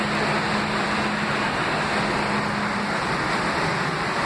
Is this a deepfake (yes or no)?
no